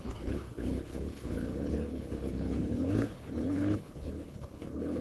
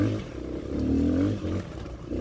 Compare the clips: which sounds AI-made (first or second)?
first